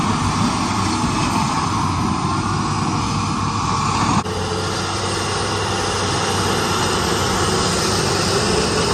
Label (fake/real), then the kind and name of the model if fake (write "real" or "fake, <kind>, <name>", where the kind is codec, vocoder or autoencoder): real